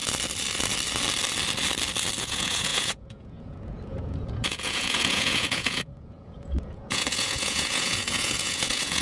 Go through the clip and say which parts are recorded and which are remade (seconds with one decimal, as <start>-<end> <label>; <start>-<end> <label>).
0.0-2.2 recorded; 2.2-9.0 remade